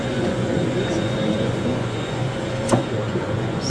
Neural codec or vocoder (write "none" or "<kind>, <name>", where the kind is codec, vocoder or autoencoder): vocoder, Vocos